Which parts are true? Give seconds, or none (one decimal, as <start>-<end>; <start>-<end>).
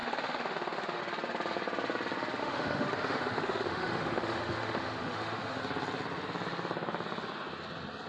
1.0-2.4; 5.6-8.1